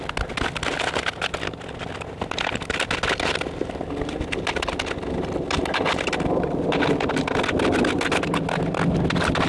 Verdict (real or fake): real